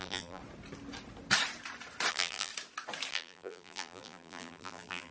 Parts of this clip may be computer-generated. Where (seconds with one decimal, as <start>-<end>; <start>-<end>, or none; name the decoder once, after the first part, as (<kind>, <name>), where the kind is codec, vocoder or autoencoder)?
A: 0.0-0.4 (vocoder, BigVGAN v2); 2.1-2.5; 3.1-5.1